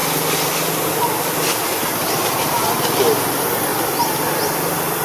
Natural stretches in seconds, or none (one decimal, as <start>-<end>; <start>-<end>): 0.0-3.7; 4.4-5.0